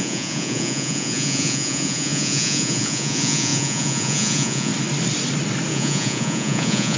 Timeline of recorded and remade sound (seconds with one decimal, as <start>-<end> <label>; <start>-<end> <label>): 0.0-4.7 remade; 4.7-5.7 recorded; 5.7-7.0 remade